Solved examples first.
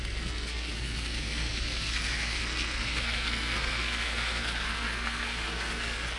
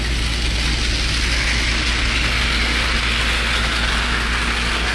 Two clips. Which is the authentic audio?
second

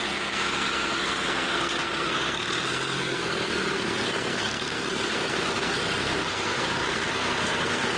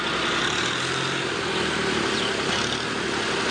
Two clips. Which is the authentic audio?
second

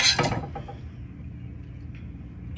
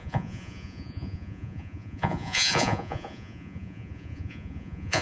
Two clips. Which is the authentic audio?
first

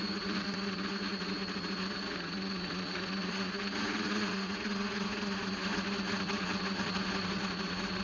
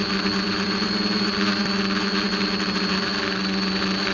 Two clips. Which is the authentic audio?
second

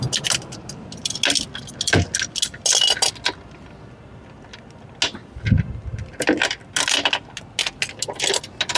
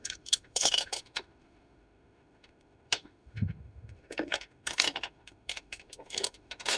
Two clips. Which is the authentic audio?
first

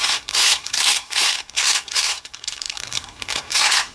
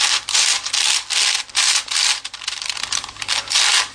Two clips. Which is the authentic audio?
second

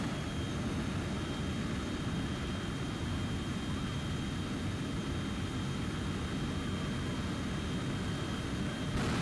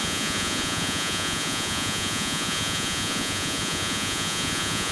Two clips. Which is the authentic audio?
first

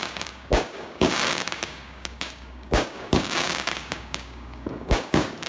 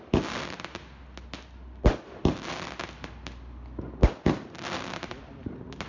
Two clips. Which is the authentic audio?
second